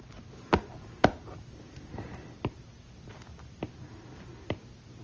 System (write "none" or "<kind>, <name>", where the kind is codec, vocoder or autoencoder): none